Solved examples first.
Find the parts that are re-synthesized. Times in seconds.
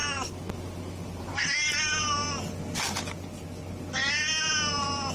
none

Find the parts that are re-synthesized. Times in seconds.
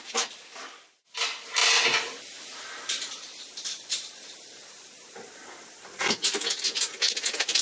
none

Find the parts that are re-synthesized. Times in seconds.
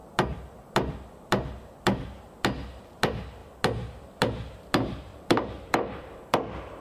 5.1-6.2 (vocoder, BigVGAN v2)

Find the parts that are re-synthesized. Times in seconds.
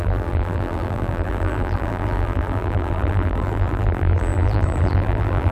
0.0-5.5 (vocoder, BigVGAN v2)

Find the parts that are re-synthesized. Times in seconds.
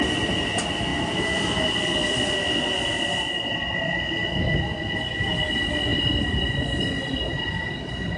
none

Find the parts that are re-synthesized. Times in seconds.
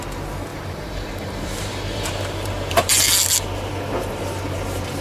0.5-3.3 (vocoder, BigVGAN v2)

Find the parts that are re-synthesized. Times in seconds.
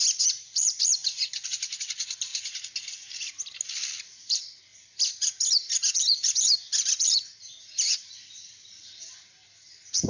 0.0-2.3 (vocoder, BigVGAN v2); 3.7-10.1